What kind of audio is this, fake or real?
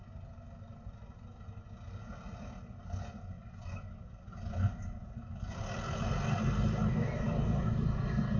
real